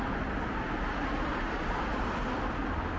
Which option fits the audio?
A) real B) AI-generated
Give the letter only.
A